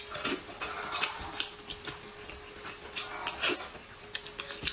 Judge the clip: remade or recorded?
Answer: recorded